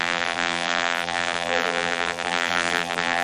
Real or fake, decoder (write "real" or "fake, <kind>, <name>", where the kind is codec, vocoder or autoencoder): fake, vocoder, BigVGAN v2